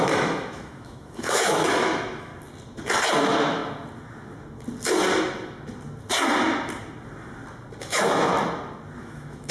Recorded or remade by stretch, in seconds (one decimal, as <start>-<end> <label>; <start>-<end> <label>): 0.0-2.3 remade; 2.3-3.2 recorded; 3.2-3.6 remade; 3.6-7.8 recorded; 7.8-8.3 remade; 8.3-9.0 recorded; 9.0-9.5 remade